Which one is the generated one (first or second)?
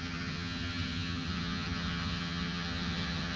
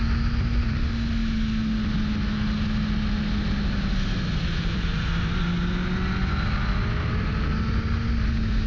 first